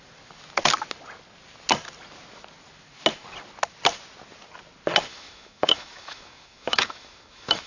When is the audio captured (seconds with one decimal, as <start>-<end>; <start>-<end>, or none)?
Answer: 0.0-5.1